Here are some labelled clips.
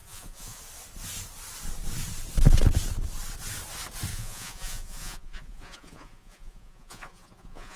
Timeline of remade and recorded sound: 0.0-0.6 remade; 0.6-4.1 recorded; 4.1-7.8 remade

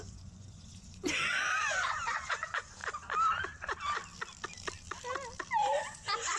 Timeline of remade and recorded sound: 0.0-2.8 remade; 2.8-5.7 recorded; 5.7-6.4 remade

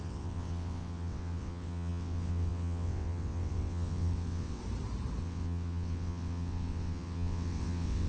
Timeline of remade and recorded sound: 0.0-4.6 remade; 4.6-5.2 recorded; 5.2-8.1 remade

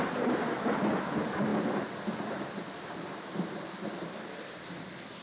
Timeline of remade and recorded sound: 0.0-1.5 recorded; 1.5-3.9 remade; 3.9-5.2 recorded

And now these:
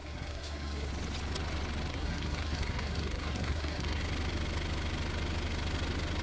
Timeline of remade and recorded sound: 0.0-0.9 remade; 0.9-1.9 recorded; 1.9-4.0 remade; 4.0-6.2 recorded

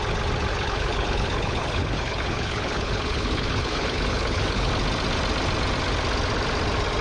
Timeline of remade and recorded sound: 0.0-0.5 recorded; 0.5-4.7 remade; 4.7-7.0 recorded

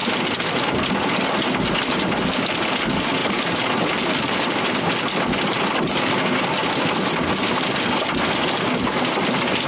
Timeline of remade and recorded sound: 0.0-9.7 recorded